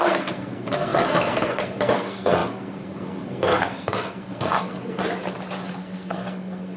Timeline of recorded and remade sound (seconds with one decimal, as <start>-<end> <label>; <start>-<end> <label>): 0.0-5.0 remade; 5.0-5.7 recorded; 5.7-6.8 remade